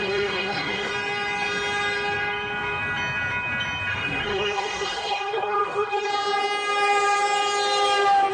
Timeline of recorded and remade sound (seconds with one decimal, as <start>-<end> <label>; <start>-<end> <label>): 0.0-0.9 remade; 0.9-3.9 recorded; 3.9-6.1 remade; 6.1-8.3 recorded